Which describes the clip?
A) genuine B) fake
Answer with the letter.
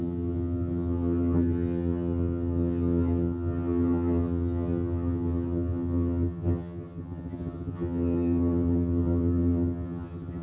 B